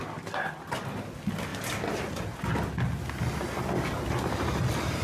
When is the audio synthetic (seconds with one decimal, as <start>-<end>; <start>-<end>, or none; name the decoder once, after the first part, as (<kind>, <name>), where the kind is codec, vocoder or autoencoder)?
none